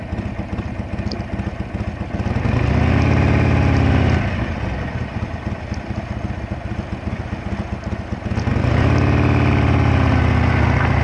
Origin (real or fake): real